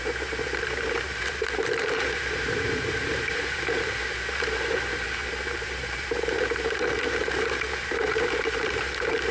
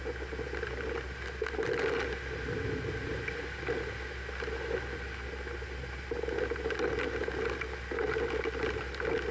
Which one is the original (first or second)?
second